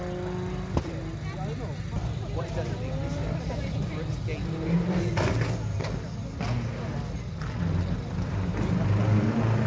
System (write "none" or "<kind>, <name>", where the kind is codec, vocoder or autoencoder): none